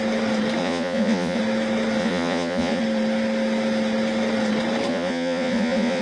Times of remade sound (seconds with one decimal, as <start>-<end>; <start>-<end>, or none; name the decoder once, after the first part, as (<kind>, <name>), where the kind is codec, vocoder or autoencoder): 0.6-1.4 (vocoder, Vocos); 2.0-2.8; 4.9-6.0